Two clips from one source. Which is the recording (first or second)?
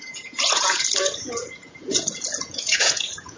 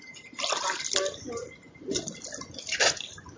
second